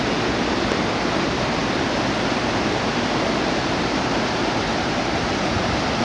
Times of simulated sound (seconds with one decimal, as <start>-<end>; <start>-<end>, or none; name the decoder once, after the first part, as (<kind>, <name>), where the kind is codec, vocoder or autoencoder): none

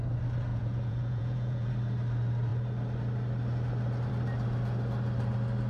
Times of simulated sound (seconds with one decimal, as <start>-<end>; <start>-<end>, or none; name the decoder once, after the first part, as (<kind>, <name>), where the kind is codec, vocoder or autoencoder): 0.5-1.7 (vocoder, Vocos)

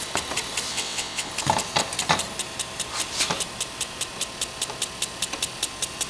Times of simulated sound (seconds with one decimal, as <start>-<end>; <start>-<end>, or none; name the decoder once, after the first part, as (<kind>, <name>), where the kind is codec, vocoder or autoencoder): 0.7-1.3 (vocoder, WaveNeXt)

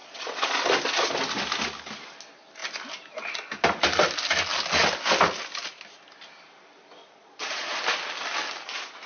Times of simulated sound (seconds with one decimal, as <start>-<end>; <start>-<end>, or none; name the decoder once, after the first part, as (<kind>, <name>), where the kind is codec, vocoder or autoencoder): 0.0-0.6 (vocoder, Vocos); 7.0-7.8

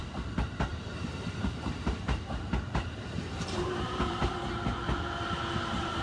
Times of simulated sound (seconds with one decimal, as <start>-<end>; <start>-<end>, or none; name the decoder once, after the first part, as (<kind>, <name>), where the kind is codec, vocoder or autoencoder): 0.7-4.3 (vocoder, BigVGAN v2)

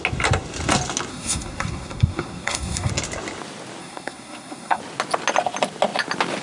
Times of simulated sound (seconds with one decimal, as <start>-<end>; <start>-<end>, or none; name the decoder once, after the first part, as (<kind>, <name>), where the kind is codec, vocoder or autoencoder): 1.1-2.9 (codec, SNAC); 3.8-4.8

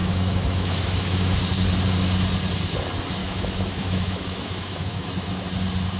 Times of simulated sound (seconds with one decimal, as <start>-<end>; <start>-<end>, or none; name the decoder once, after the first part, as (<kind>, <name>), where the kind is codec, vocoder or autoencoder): 0.0-1.4 (autoencoder, DAC-VAE); 3.2-5.4